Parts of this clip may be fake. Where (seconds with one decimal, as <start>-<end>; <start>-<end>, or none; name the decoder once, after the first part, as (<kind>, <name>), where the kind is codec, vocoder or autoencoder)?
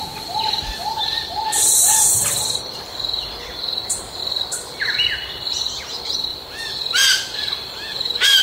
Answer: 6.3-8.4 (vocoder, BigVGAN v2)